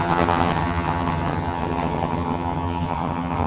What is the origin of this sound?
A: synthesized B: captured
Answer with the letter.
A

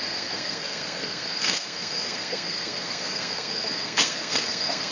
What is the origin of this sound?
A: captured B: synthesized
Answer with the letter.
B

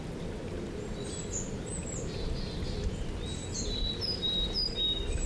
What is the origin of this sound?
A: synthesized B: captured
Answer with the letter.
B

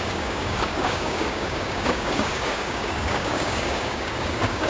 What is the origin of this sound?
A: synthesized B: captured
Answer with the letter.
A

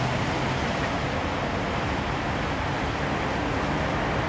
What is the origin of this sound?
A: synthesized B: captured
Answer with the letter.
B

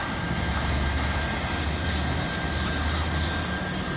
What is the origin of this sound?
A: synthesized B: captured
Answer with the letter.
B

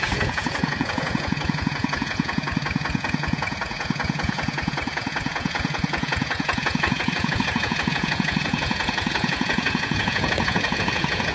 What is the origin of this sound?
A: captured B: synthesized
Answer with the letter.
B